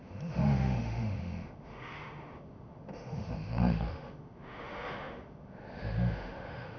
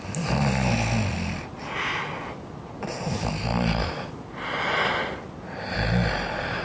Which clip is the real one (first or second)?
second